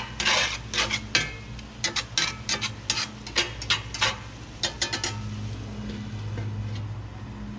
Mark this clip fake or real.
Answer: real